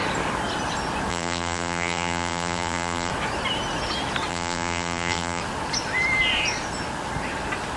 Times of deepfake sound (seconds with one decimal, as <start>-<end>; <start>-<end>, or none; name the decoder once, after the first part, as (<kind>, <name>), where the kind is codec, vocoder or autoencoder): 1.1-3.1 (vocoder, BigVGAN v2); 4.3-5.4